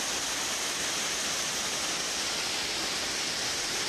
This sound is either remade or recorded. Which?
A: recorded